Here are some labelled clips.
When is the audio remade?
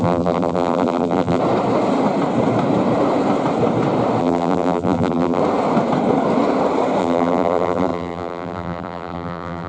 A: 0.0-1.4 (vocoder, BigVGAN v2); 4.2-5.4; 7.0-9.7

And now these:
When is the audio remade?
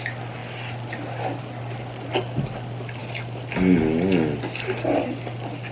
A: none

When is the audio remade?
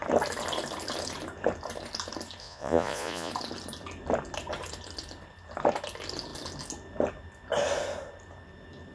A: 2.4-3.3 (vocoder, Vocos)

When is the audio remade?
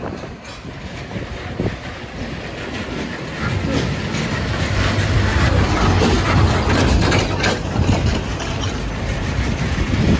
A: 8.3-8.8 (vocoder, BigVGAN v2)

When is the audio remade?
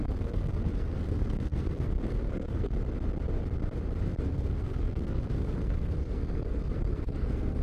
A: 0.0-2.8 (codec, SNAC); 4.2-7.6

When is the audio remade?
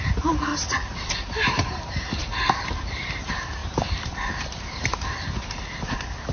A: 0.0-0.5 (vocoder, BigVGAN v2); 1.0-2.2; 2.7-6.3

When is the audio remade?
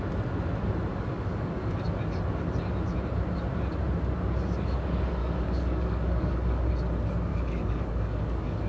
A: 0.9-1.8 (codec, DAC); 5.2-6.7; 7.3-8.7